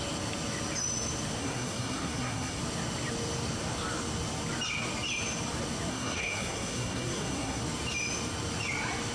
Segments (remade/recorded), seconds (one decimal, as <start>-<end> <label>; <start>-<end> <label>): 0.0-1.4 recorded; 1.4-2.6 remade; 2.6-5.9 recorded; 5.9-7.6 remade; 7.6-9.1 recorded